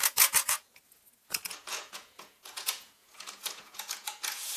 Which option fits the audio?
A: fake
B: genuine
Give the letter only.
A